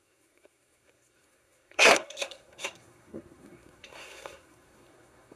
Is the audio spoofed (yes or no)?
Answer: yes